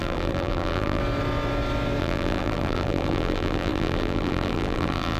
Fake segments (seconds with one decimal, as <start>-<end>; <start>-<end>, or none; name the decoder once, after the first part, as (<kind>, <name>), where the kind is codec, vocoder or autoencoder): 0.0-1.0 (vocoder, BigVGAN v2); 2.0-5.2